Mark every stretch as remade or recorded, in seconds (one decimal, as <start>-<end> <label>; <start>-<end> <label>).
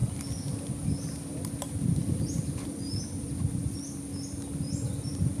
0.0-3.6 recorded; 3.6-5.4 remade